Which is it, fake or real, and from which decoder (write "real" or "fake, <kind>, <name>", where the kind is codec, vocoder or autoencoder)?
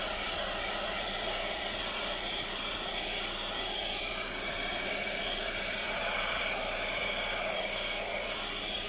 fake, vocoder, BigVGAN v2